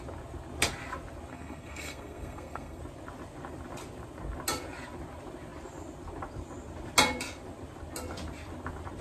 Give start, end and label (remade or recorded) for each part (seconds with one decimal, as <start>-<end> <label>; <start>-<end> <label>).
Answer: 0.0-1.3 recorded; 1.3-2.8 remade; 2.8-9.0 recorded